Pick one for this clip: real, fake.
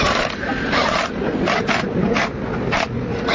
real